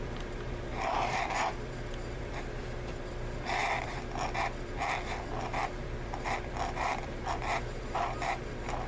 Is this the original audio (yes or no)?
no